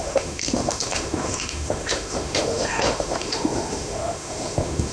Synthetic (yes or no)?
yes